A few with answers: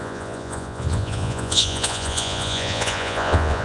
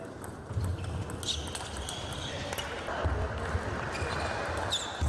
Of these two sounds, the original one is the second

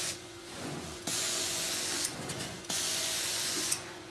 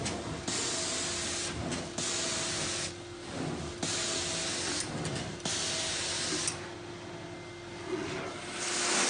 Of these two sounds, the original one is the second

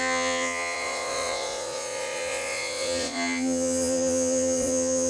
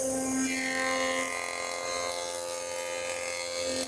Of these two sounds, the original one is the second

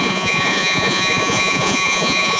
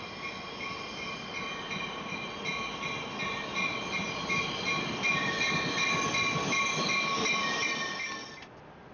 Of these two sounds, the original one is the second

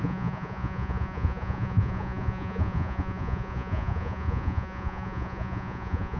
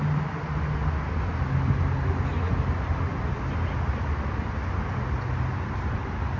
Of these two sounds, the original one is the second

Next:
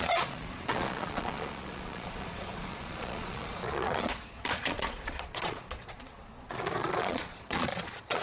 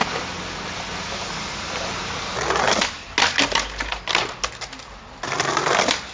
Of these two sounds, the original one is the second